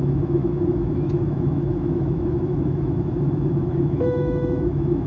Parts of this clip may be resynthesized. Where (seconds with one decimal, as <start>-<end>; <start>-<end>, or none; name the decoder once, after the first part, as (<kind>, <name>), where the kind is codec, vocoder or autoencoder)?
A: 0.0-5.1 (autoencoder, DAC-VAE)